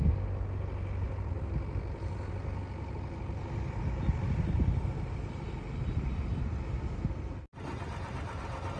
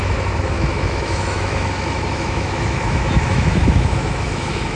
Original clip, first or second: first